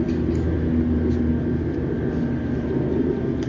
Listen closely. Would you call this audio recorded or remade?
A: recorded